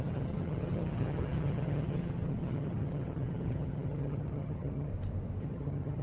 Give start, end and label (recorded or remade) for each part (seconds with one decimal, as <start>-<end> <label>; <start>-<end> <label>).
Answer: 0.0-4.9 remade; 4.9-5.4 recorded; 5.4-6.0 remade